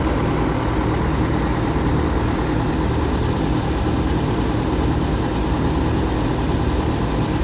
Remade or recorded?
recorded